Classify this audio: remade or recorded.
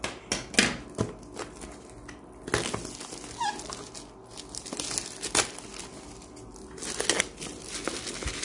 recorded